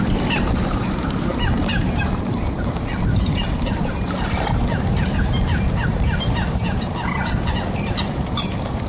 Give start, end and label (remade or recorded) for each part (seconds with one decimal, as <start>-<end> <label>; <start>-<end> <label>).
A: 0.0-8.9 remade